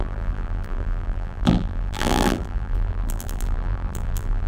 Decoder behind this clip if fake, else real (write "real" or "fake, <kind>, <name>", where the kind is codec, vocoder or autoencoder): fake, vocoder, BigVGAN v2